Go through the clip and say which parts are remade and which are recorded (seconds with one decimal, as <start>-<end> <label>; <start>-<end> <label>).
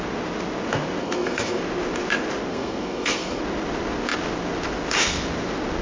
0.0-1.0 recorded; 1.0-1.6 remade; 1.6-2.5 recorded; 2.5-3.4 remade; 3.4-5.8 recorded